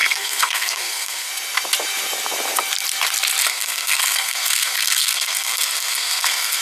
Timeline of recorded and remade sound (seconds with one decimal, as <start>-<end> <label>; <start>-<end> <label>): 0.0-1.3 remade; 1.3-3.4 recorded; 3.4-6.6 remade